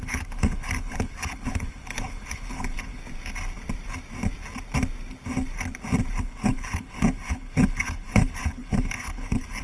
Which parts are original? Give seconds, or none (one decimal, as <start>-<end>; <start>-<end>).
3.0-6.2